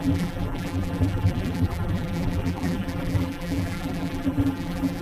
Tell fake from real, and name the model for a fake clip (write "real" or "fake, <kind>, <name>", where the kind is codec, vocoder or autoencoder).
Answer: fake, vocoder, BigVGAN v2